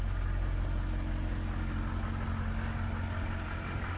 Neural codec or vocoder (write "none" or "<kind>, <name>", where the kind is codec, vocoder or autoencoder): none